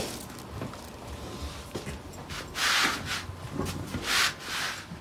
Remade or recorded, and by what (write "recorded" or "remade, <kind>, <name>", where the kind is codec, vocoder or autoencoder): recorded